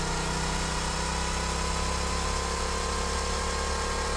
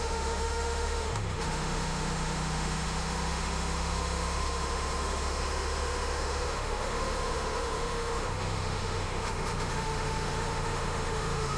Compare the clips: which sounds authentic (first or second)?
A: first